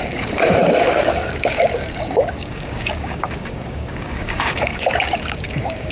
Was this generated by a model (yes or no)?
yes